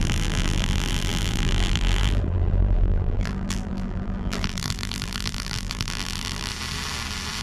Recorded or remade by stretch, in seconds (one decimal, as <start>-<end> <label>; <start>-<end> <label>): 0.0-6.5 remade; 6.5-7.4 recorded